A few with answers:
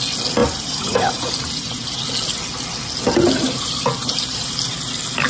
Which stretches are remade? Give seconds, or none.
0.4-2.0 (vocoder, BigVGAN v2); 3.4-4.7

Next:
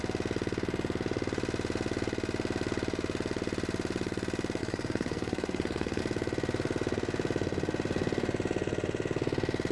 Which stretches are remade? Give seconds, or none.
4.6-6.0 (codec, SNAC)

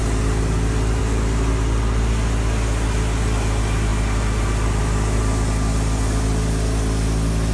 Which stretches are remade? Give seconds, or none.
none

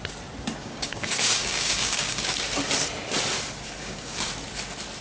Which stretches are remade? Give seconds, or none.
0.6-2.4 (codec, DAC); 3.8-4.3

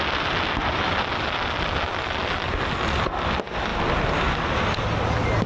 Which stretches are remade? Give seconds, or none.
none

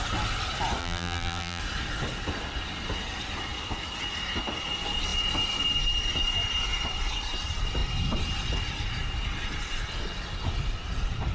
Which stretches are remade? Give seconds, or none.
0.8-1.6 (vocoder, BigVGAN v2)